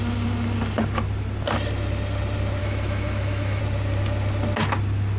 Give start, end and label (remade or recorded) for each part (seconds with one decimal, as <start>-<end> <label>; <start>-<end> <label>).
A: 0.0-2.6 recorded; 2.6-3.6 remade; 3.6-5.2 recorded